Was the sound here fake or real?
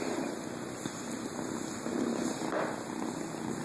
real